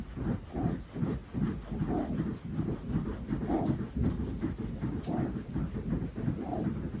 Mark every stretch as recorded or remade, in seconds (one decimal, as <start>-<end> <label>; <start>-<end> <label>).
0.0-7.0 recorded